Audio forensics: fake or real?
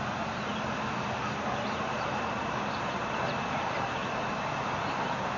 fake